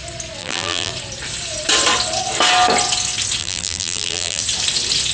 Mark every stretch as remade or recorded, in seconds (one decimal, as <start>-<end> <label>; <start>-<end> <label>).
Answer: 0.0-0.4 recorded; 0.4-0.9 remade; 0.9-3.4 recorded; 3.4-4.4 remade; 4.4-5.1 recorded